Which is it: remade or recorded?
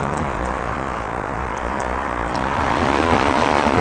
remade